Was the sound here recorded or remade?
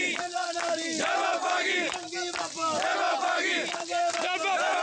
recorded